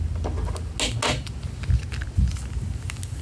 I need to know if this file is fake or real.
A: real